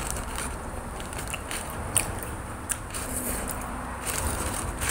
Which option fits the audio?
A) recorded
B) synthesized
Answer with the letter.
B